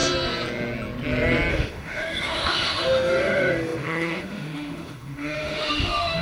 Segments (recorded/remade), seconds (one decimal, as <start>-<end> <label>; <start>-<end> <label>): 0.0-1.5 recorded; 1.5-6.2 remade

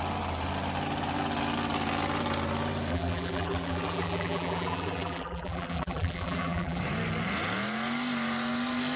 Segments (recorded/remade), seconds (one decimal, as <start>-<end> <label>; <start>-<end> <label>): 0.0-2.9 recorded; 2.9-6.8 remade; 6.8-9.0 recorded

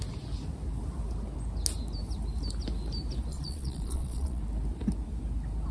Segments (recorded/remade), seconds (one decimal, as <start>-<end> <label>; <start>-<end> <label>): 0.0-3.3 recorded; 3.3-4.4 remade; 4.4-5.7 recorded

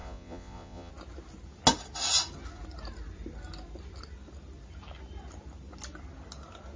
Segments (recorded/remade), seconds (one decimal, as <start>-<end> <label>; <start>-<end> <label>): 0.0-0.9 remade; 0.9-6.8 recorded